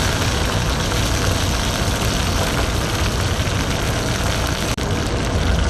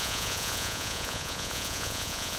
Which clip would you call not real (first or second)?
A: second